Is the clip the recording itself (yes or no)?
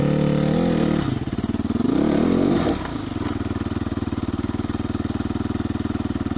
yes